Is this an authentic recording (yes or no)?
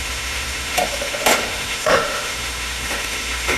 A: no